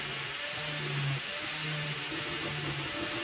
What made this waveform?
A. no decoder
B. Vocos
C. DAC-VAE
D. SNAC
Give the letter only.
A